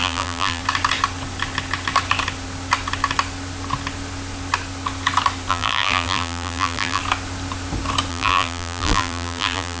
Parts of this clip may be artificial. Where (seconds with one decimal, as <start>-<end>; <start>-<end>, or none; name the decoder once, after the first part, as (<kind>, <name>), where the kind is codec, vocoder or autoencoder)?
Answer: 0.0-0.6 (vocoder, BigVGAN v2); 5.5-7.0; 8.1-9.8